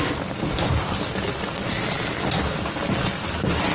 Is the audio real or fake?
real